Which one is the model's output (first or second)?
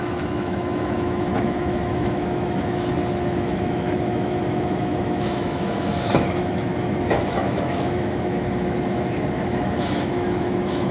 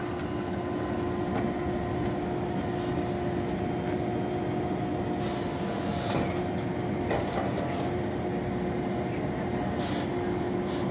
first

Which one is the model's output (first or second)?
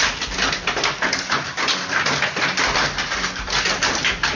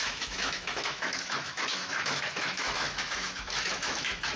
second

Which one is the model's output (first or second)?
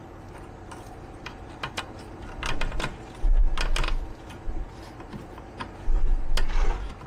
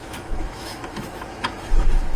second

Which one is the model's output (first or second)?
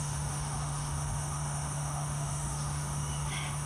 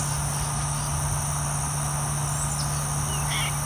first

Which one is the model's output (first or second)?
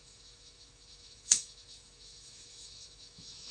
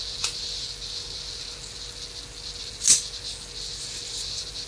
first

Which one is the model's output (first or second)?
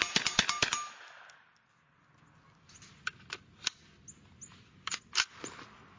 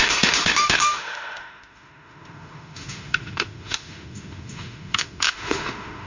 second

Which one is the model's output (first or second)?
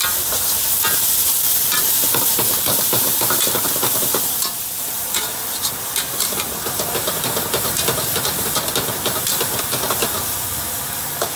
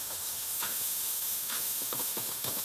second